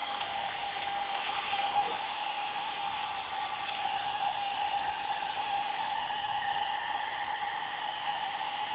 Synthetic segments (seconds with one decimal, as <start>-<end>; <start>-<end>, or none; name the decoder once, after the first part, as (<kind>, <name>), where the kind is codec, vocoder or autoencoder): 0.0-3.0 (autoencoder, DAC-VAE); 4.0-4.5; 5.4-6.5; 7.6-8.7